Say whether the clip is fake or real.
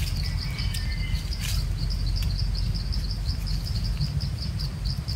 real